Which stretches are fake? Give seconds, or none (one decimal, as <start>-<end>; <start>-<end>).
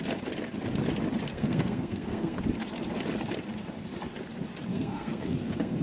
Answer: 1.3-2.4; 4.7-5.8